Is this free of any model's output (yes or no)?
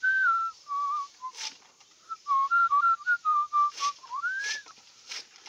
no